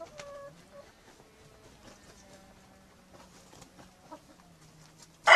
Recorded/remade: recorded